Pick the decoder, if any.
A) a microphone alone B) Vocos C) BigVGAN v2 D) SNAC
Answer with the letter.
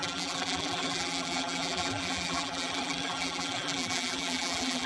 C